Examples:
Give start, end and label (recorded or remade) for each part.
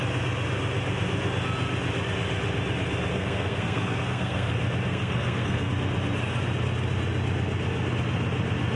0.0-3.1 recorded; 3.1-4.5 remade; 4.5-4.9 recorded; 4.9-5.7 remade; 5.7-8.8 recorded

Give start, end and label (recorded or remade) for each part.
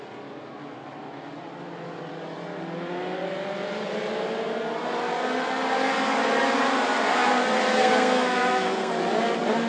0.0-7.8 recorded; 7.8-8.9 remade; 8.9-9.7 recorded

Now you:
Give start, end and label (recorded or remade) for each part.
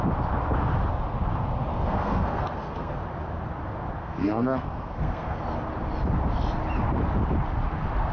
0.0-1.7 recorded; 1.7-2.9 remade; 2.9-4.0 recorded; 4.0-5.4 remade; 5.4-8.1 recorded